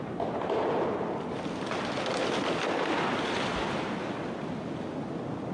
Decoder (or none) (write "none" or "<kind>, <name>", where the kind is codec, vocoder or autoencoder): none